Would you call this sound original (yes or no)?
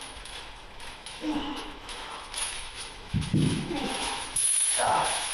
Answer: no